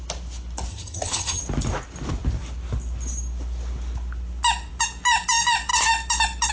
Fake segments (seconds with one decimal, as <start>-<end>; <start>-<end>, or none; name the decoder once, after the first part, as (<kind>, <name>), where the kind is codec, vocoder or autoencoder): 0.7-1.4 (vocoder, HiFi-GAN)